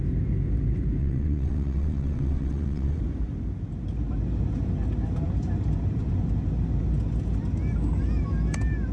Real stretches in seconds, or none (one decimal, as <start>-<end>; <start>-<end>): 0.0-1.0; 3.0-8.9

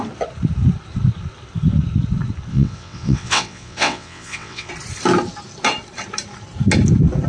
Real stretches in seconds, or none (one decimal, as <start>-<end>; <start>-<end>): 0.0-2.5; 4.7-7.3

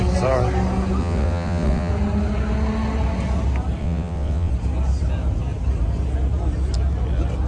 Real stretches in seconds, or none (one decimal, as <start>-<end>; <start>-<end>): 0.0-1.0; 1.9-3.8; 4.5-7.5

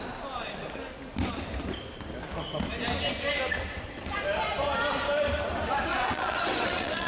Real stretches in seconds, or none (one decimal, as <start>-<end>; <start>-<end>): 0.0-5.9

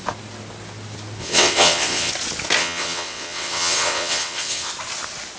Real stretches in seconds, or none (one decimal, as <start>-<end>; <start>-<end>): 0.0-1.2; 2.1-2.6; 4.7-5.4

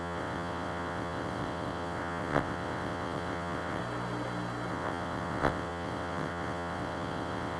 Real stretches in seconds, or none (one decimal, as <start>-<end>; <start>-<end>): 3.8-4.7

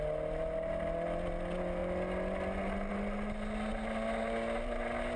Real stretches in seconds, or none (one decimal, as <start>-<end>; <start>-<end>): 0.0-5.2

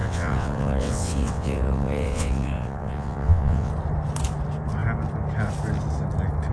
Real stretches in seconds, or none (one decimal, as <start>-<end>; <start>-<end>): 3.7-6.5